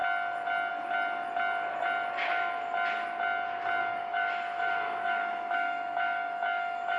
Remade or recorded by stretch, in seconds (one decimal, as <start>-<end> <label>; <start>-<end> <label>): 0.0-3.8 recorded; 3.8-7.0 remade